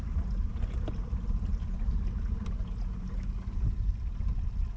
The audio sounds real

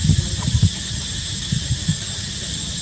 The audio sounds real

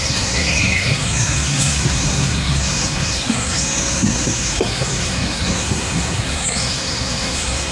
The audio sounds fake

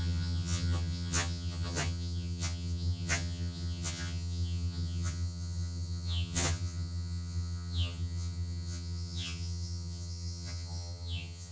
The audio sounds fake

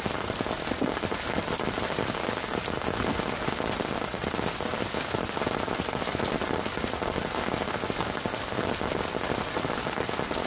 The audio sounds real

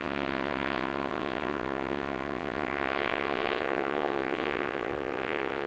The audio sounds fake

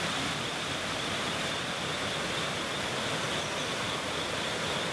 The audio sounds real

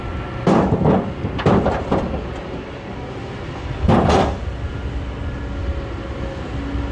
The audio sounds real